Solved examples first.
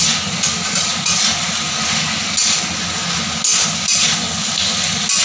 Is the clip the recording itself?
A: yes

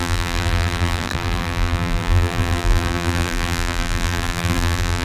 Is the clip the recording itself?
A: no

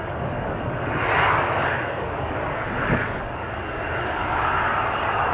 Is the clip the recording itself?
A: no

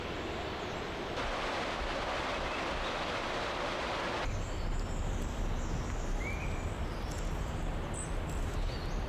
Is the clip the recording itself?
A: yes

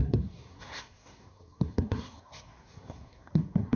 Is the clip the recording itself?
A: no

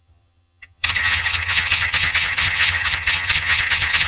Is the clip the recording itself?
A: no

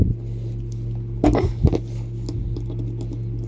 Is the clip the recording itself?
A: yes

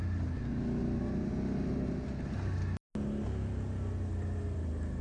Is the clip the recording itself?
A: yes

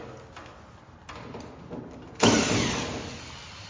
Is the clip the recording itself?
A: yes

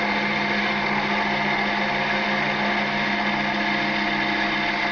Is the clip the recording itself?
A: yes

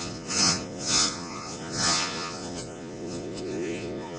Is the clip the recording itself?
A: no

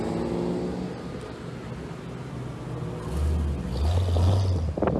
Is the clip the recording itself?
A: yes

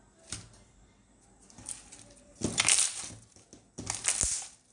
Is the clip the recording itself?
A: yes